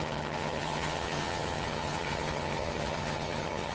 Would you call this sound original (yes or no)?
no